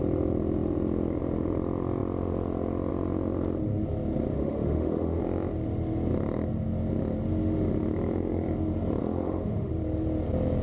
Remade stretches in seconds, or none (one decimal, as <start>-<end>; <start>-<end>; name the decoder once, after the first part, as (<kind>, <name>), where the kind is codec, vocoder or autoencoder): 4.3-5.2 (autoencoder, DAC-VAE); 9.0-9.7